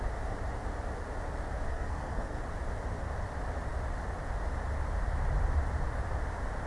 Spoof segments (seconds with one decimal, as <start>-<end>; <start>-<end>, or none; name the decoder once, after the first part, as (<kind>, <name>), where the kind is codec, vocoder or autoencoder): 1.7-2.4 (codec, SNAC)

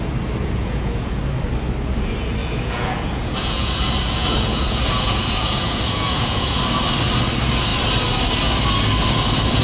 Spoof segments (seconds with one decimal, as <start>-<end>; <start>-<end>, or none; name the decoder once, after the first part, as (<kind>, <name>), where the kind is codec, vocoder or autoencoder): 0.4-1.2 (vocoder, Vocos); 2.4-6.6

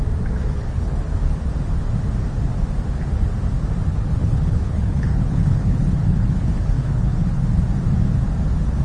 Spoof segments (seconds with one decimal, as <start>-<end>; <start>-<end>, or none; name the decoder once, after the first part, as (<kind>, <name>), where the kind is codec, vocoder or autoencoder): 0.4-1.5 (codec, HILCodec); 3.9-7.6

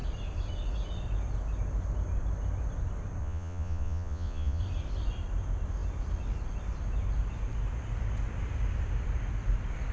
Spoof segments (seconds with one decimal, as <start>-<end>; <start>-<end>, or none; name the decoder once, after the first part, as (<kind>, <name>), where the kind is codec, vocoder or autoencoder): 3.2-4.6 (vocoder, Vocos)

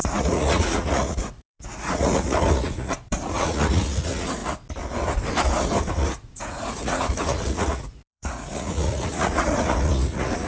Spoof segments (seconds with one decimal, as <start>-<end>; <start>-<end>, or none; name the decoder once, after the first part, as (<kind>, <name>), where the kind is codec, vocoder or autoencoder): 0.0-4.4 (vocoder, Vocos); 5.9-10.5

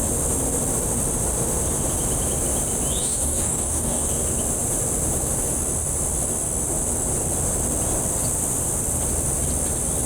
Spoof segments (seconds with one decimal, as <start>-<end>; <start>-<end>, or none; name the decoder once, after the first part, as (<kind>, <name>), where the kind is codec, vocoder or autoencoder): 3.0-4.1 (codec, DAC)

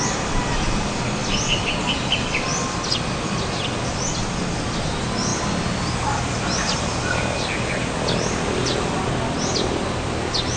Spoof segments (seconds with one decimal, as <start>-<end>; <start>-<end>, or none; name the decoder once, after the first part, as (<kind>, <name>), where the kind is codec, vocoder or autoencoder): none

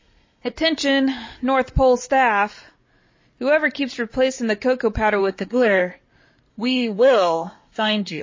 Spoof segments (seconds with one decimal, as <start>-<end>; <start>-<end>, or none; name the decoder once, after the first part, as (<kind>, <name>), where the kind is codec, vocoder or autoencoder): 0.0-0.5 (codec, SNAC); 5.2-5.8; 6.5-8.2